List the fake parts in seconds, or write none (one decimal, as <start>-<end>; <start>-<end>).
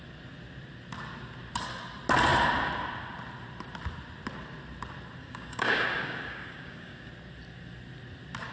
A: 5.2-7.1